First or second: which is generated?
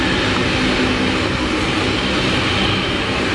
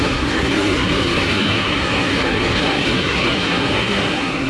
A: second